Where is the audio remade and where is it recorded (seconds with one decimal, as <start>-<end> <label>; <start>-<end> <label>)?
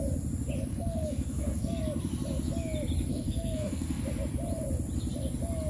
0.0-0.7 recorded; 0.7-1.8 remade; 1.8-3.1 recorded; 3.1-4.0 remade; 4.0-5.7 recorded